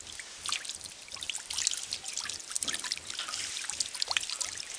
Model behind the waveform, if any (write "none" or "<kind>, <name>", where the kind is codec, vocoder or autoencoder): none